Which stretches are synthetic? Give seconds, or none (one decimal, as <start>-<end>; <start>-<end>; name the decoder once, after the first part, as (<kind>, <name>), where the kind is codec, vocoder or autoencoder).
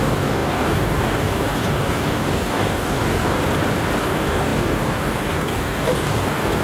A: 0.0-3.4 (codec, DAC); 4.0-6.6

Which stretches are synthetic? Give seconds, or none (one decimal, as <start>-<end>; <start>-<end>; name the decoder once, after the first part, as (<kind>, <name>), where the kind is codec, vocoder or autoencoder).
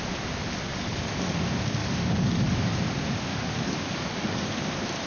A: 0.7-1.4 (codec, DAC); 1.8-2.8; 3.3-4.5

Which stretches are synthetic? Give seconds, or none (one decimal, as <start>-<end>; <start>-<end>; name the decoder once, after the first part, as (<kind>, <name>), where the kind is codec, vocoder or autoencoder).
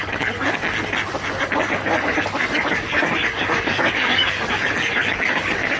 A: 0.0-0.6 (codec, DAC); 1.4-5.8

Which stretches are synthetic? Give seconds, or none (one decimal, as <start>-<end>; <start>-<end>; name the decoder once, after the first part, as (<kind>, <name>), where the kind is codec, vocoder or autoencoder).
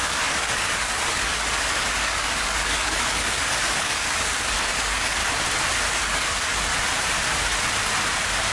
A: 0.0-5.2 (codec, DAC); 5.9-6.7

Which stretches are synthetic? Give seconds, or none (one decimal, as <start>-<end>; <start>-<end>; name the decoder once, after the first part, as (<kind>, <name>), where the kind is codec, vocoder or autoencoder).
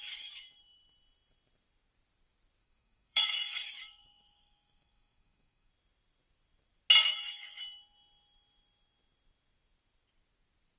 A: 2.6-5.7 (codec, DAC); 7.0-7.6